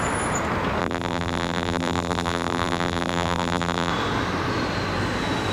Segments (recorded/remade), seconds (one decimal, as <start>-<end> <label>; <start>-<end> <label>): 0.0-0.8 recorded; 0.8-3.9 remade; 3.9-5.5 recorded

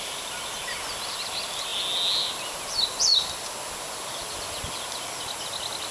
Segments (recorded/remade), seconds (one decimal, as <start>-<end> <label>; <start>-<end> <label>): 0.0-5.9 recorded

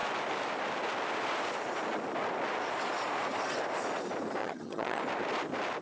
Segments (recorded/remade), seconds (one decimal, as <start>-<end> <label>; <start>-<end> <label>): 0.0-4.4 recorded; 4.4-5.0 remade; 5.0-5.8 recorded